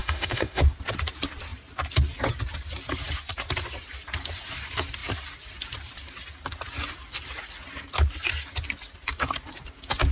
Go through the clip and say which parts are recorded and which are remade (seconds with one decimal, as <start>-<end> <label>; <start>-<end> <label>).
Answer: 0.0-0.6 remade; 0.6-10.1 recorded